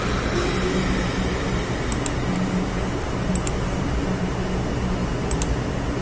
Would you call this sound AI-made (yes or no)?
no